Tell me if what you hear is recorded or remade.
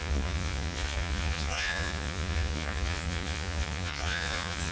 remade